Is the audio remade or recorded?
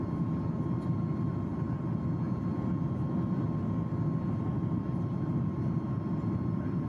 recorded